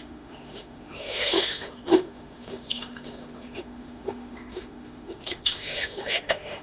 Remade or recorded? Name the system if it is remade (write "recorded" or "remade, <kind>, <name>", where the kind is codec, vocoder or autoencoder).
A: remade, autoencoder, DAC-VAE